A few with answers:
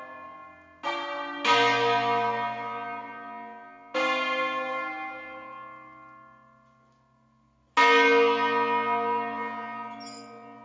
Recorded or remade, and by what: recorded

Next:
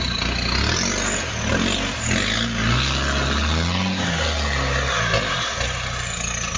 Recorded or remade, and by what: recorded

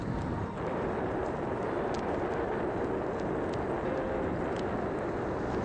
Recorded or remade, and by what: recorded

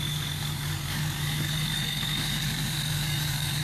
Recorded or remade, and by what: remade, codec, DAC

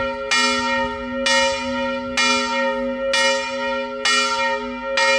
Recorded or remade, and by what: recorded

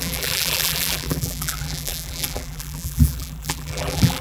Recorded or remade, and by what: remade, vocoder, BigVGAN v2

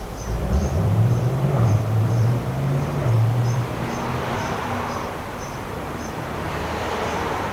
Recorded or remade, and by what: remade, vocoder, BigVGAN v2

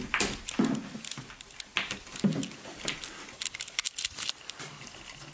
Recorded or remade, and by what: recorded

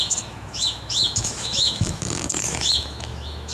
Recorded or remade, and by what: remade, autoencoder, DAC-VAE